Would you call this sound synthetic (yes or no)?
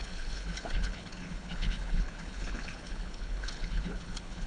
yes